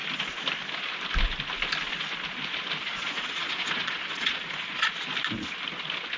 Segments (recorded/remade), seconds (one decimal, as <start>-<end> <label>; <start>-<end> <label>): 0.0-2.8 recorded; 2.8-4.9 remade; 4.9-6.2 recorded